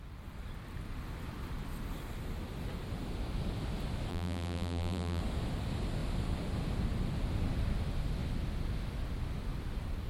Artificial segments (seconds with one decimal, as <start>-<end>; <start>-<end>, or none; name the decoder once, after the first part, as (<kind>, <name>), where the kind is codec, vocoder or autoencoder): 4.1-5.2 (vocoder, BigVGAN v2)